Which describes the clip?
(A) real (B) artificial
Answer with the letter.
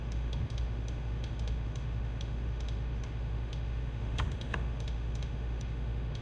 B